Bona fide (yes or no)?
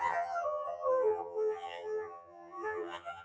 no